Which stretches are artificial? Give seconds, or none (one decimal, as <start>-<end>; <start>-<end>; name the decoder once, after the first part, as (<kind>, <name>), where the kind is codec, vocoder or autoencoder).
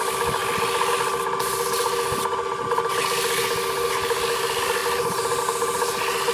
none